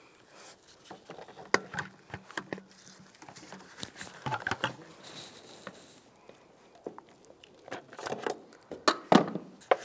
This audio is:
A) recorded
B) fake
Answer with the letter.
A